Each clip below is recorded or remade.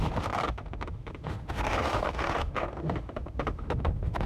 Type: remade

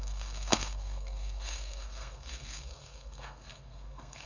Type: remade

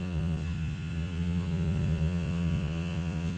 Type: remade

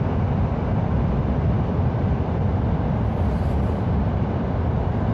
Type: recorded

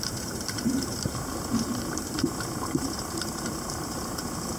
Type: remade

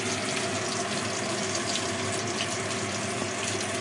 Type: recorded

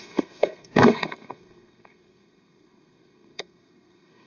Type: remade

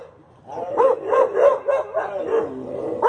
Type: recorded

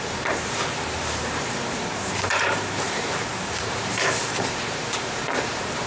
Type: remade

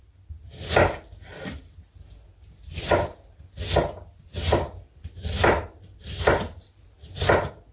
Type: recorded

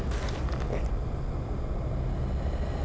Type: recorded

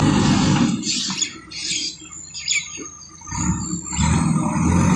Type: recorded